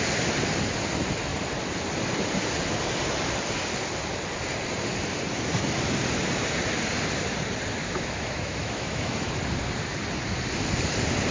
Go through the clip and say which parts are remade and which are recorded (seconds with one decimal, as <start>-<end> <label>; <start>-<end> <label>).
0.0-7.8 recorded; 7.8-9.3 remade; 9.3-11.3 recorded